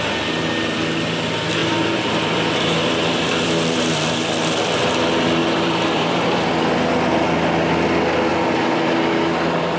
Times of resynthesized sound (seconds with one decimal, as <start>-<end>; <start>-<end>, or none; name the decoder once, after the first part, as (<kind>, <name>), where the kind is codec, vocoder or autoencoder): 1.6-4.8 (vocoder, BigVGAN v2); 5.4-6.5; 8.3-8.9

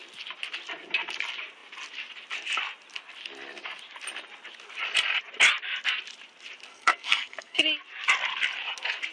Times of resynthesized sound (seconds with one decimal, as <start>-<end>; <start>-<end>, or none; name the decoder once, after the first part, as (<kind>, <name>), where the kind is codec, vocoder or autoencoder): 6.7-7.6 (codec, SNAC)

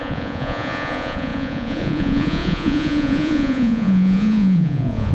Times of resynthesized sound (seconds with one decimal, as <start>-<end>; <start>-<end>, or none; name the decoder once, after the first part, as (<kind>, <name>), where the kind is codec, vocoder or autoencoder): 0.0-5.1 (vocoder, Vocos)

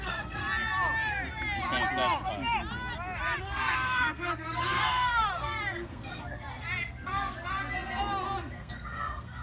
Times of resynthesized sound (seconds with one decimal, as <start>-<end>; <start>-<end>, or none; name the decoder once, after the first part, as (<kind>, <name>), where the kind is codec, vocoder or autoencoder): 0.0-0.4 (codec, SNAC); 3.4-9.4